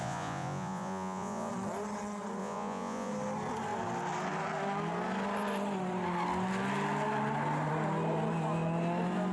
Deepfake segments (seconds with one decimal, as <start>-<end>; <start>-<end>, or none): 0.0-1.5; 2.4-3.1